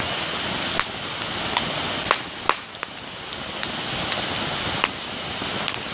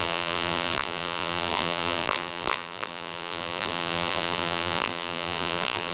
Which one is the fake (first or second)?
second